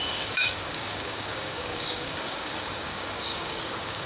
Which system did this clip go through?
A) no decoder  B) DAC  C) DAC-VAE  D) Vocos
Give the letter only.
B